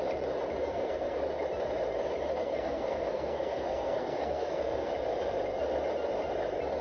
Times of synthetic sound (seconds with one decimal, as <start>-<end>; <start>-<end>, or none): 0.6-1.2; 2.4-4.9